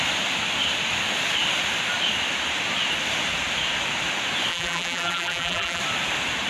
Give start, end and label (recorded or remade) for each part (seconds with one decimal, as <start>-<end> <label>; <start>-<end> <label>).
0.0-4.5 recorded; 4.5-5.8 remade; 5.8-6.5 recorded